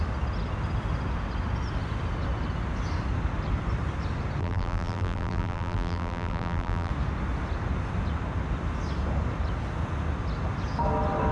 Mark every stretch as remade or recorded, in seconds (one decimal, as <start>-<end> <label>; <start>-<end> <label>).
0.0-4.4 recorded; 4.4-6.9 remade; 6.9-11.3 recorded